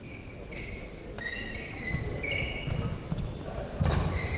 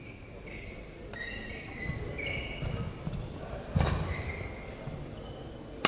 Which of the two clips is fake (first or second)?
first